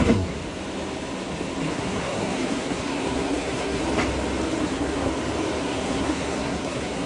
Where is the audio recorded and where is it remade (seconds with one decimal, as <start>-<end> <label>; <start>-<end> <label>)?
0.0-0.4 remade; 0.4-1.7 recorded; 1.7-3.8 remade; 3.8-4.6 recorded; 4.6-5.1 remade; 5.1-5.6 recorded; 5.6-7.1 remade